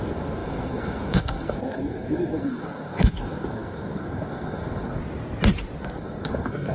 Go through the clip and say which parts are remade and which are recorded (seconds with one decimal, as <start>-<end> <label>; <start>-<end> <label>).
0.0-5.0 remade; 5.0-5.8 recorded; 5.8-6.7 remade

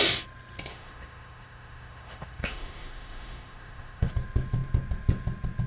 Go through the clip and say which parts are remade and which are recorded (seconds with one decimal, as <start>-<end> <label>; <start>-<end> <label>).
0.0-0.7 recorded; 0.7-4.1 remade; 4.1-5.7 recorded

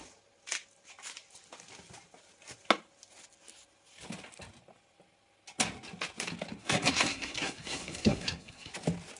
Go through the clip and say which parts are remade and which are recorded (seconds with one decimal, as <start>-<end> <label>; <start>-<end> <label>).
0.0-6.6 recorded; 6.6-8.7 remade; 8.7-9.2 recorded

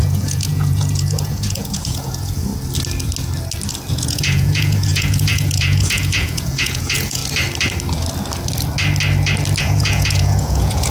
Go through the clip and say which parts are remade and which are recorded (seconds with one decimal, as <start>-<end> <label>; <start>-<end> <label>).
0.0-2.5 remade; 2.5-3.9 recorded; 3.9-7.2 remade; 7.2-9.6 recorded; 9.6-10.9 remade

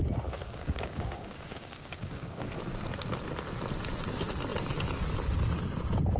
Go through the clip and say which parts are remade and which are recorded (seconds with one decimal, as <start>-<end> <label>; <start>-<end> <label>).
0.0-0.4 recorded; 0.4-2.5 remade; 2.5-6.2 recorded